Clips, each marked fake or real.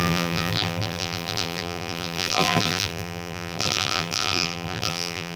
fake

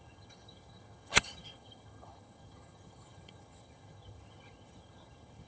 fake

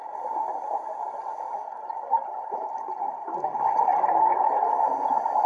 real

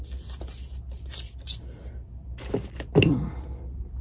real